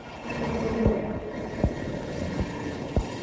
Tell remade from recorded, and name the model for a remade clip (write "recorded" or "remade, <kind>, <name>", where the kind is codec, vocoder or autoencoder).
remade, codec, HILCodec